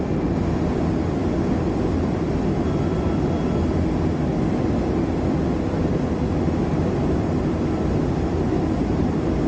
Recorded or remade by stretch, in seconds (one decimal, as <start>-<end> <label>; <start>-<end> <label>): 0.0-9.5 recorded